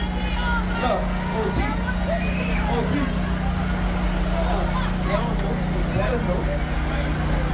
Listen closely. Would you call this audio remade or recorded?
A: recorded